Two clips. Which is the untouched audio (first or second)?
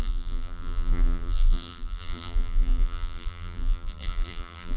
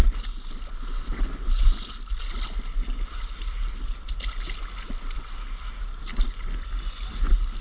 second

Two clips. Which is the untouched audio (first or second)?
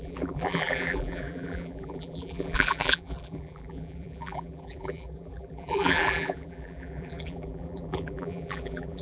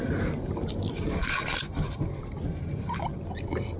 second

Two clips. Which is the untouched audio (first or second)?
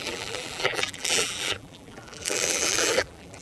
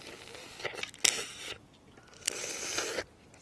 second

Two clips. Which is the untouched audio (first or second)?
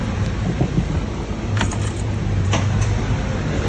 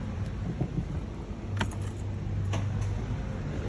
second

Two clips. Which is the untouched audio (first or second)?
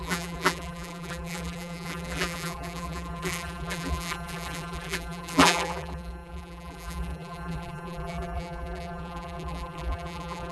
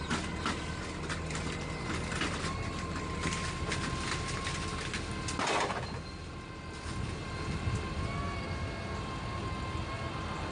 second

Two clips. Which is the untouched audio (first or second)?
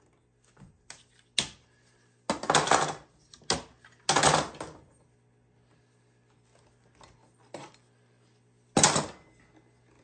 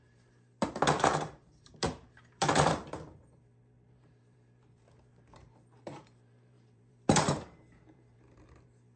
first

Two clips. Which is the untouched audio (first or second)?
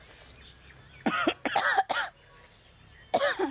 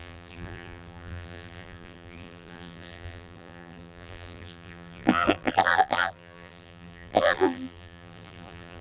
first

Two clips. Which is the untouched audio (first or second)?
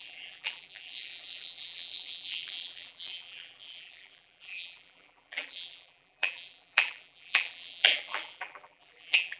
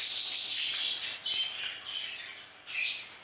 second